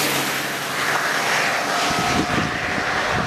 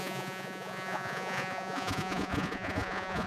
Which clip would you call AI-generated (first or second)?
second